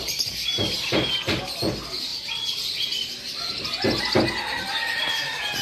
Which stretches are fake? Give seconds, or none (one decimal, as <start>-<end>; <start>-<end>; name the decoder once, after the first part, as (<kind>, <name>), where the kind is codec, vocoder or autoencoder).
none